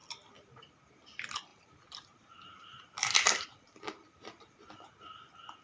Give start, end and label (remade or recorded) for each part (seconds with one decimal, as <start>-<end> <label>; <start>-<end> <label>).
0.0-1.5 recorded; 1.5-4.9 remade; 4.9-5.6 recorded